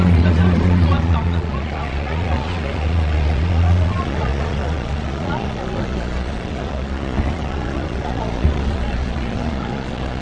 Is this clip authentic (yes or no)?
no